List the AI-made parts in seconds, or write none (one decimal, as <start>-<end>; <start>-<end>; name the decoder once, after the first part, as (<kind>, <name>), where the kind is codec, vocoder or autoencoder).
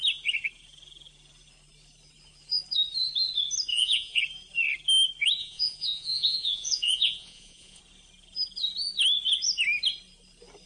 3.7-4.2 (vocoder, Vocos); 5.4-7.8